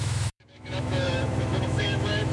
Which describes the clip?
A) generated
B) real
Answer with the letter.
A